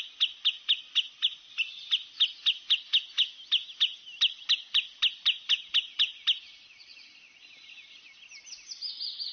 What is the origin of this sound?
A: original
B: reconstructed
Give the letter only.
A